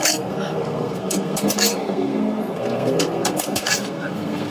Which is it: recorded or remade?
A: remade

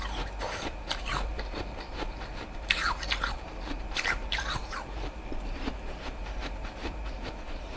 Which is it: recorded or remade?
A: remade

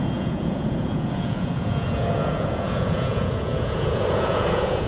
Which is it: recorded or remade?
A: remade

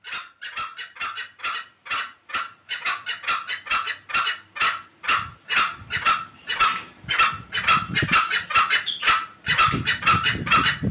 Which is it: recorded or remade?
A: recorded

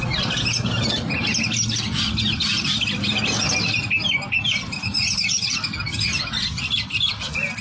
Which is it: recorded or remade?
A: recorded